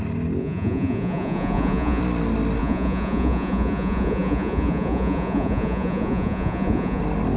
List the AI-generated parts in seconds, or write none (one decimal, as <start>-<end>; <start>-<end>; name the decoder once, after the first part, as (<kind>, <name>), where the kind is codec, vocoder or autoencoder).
0.4-2.0 (vocoder, Vocos); 2.6-7.0